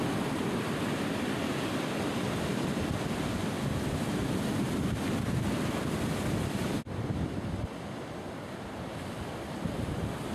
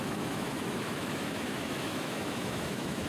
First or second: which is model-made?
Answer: second